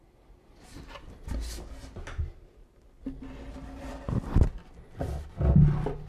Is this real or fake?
real